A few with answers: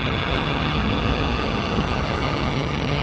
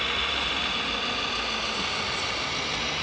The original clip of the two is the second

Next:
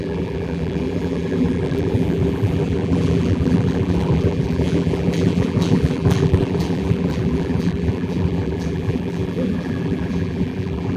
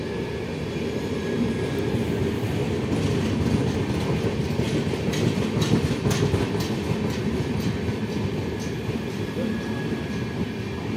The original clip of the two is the second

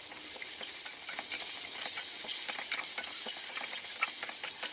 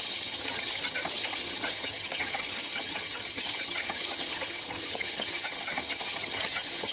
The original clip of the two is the first